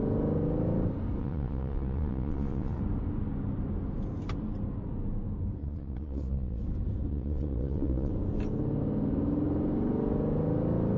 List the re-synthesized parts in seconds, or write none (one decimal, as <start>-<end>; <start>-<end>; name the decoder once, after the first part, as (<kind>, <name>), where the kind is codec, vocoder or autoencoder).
1.2-2.8 (vocoder, Vocos); 5.6-6.6; 7.1-8.1